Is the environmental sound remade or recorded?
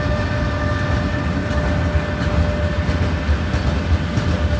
recorded